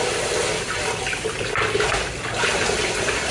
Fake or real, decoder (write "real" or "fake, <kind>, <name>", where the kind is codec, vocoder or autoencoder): real